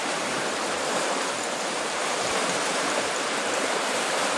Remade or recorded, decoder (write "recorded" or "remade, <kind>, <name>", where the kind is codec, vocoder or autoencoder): remade, vocoder, BigVGAN v2